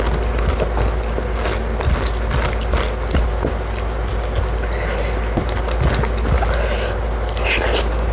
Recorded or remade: recorded